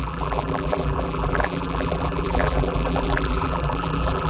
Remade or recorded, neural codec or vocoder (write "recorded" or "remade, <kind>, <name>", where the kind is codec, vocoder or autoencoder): remade, vocoder, BigVGAN v2